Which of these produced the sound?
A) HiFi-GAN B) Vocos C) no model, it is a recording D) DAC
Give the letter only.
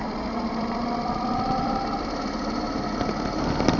C